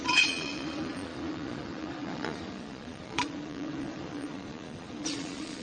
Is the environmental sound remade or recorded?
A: remade